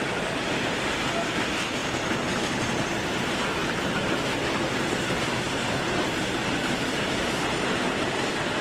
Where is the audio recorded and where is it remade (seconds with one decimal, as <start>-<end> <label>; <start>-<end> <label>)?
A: 0.0-8.6 recorded